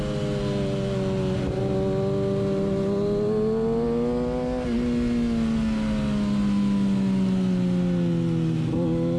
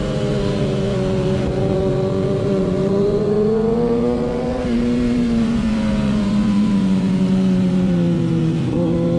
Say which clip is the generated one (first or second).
second